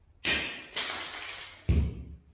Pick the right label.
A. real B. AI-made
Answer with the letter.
A